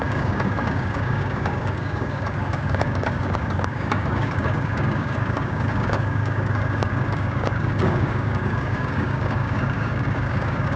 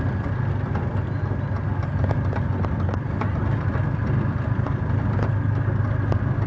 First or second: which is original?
second